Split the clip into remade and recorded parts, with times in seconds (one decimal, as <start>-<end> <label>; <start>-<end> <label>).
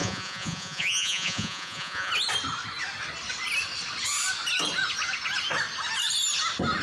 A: 0.0-2.1 remade; 2.1-6.8 recorded